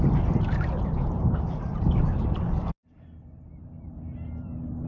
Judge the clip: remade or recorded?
remade